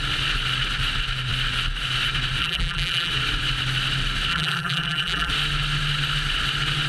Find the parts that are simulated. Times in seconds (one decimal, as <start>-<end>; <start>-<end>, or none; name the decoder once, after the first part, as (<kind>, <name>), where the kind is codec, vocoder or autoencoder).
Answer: 2.4-3.1 (vocoder, BigVGAN v2); 4.3-5.3

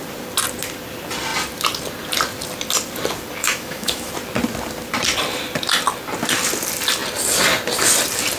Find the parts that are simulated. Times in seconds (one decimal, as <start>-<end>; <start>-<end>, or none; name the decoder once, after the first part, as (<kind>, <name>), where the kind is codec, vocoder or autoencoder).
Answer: 3.4-4.1 (autoencoder, DAC-VAE)